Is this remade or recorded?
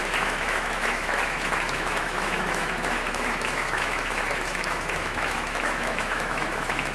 remade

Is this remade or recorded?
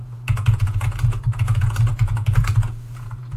remade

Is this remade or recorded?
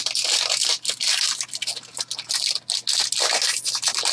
recorded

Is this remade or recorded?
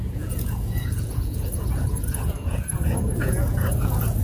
remade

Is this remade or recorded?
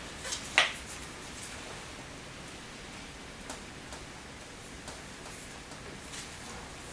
recorded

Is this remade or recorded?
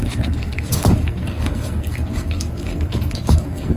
remade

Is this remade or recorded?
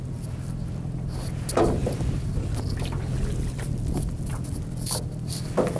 recorded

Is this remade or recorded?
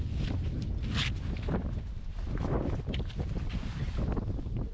recorded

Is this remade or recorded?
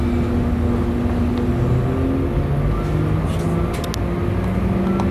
recorded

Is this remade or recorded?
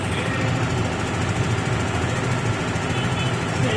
recorded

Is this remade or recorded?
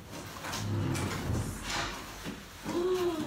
recorded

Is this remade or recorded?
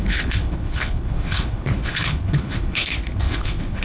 remade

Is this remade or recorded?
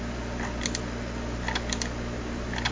recorded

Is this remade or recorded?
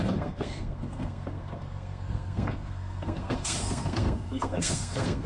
remade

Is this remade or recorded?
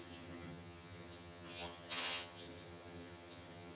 remade